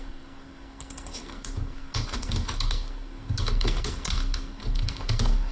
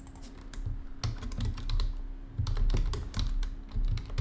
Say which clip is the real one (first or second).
second